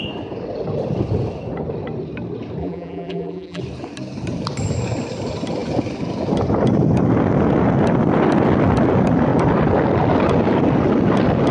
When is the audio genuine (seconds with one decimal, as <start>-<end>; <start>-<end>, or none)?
0.0-2.6; 3.6-11.5